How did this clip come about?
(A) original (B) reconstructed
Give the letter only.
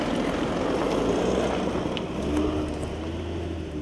A